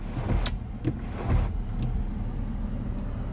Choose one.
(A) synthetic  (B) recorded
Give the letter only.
B